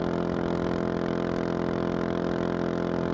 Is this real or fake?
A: real